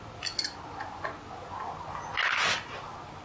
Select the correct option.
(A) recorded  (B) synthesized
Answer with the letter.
A